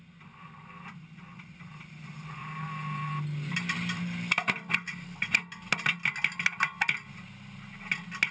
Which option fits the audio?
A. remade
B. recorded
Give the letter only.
B